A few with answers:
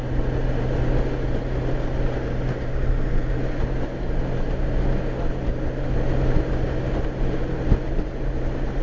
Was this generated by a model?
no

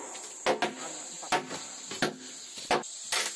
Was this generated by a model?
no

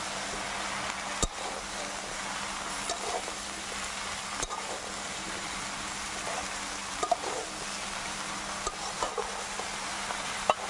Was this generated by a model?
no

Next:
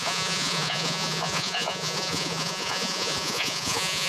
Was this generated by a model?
yes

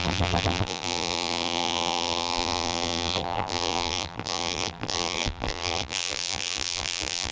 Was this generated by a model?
yes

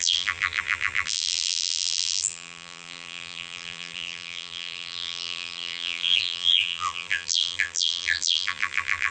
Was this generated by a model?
yes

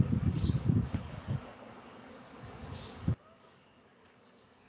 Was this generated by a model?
yes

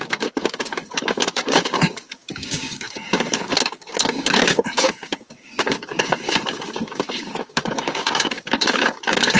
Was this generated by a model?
yes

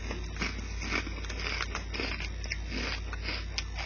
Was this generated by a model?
no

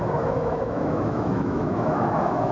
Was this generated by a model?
yes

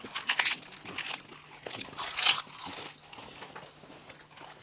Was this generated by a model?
no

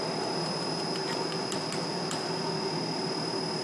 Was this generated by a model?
no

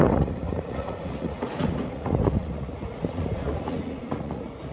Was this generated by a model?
yes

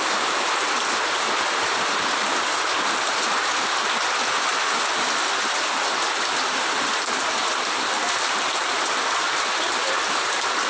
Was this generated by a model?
no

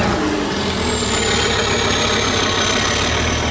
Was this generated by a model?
no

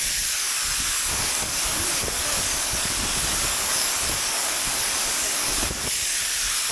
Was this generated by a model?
yes